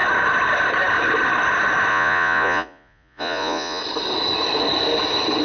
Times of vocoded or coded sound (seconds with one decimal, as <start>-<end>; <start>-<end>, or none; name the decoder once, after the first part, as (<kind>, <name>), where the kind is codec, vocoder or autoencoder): 1.9-3.8 (vocoder, Vocos)